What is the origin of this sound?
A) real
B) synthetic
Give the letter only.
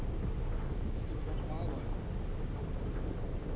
A